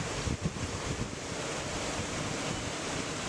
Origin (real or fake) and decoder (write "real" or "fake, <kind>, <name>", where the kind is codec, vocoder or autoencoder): real